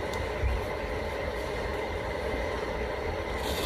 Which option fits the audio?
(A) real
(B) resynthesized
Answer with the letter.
A